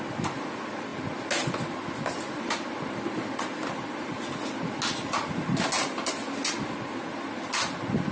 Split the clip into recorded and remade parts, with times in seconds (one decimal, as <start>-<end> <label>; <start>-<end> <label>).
0.0-8.1 recorded